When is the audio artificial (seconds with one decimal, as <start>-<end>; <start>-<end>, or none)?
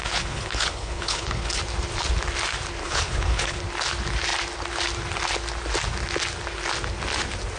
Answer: 0.0-1.6; 2.8-3.6